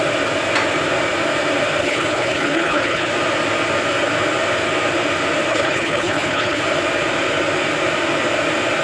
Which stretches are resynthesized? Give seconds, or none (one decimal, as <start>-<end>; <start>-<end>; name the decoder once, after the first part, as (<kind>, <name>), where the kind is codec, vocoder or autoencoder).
1.8-3.1 (codec, HILCodec); 5.5-6.6